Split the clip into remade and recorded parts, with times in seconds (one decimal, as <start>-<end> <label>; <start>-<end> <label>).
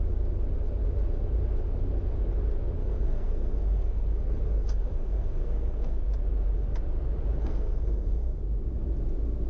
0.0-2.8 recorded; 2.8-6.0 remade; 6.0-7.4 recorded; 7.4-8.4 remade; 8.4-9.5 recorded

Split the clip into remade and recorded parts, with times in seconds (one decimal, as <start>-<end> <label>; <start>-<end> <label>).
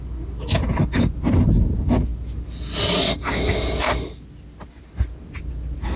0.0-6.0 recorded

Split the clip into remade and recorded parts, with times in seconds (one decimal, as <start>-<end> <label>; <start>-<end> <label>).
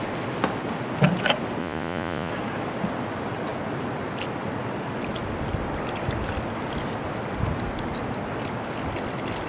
0.0-1.6 recorded; 1.6-2.3 remade; 2.3-9.5 recorded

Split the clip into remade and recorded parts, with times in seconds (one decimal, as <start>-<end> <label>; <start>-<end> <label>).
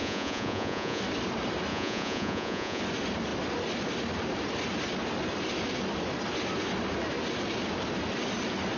0.0-1.0 remade; 1.0-1.7 recorded; 1.7-2.8 remade; 2.8-8.8 recorded